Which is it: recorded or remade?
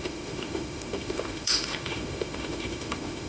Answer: remade